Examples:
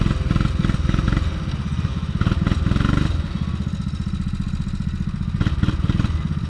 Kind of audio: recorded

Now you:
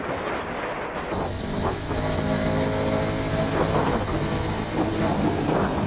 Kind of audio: recorded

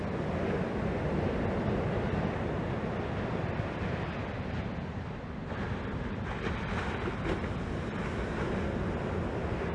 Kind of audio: recorded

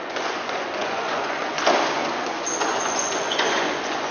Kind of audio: remade